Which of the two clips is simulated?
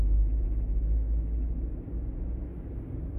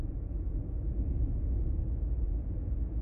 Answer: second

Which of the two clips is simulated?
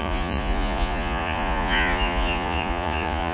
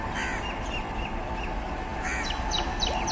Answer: first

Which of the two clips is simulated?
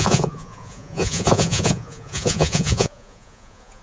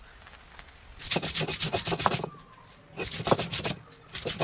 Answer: first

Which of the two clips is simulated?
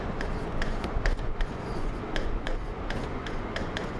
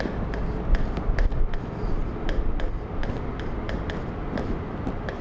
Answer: first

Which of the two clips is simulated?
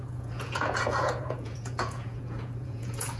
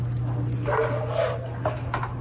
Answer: first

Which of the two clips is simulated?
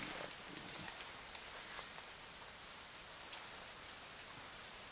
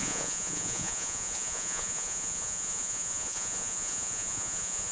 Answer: second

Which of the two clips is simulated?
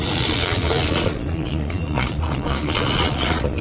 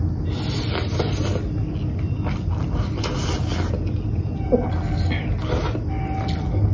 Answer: first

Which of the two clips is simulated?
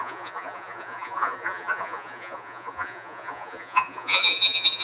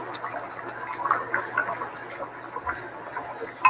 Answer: first